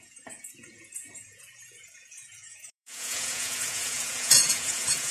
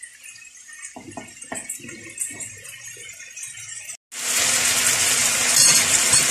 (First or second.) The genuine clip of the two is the second